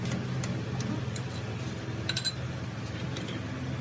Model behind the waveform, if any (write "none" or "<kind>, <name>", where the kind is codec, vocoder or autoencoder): none